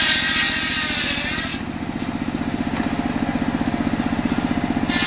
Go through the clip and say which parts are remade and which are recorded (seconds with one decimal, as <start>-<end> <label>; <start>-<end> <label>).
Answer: 0.0-5.1 recorded